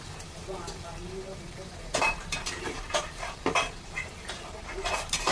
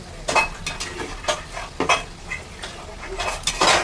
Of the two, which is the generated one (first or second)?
first